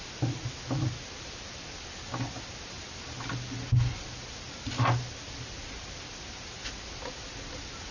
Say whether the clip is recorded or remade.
recorded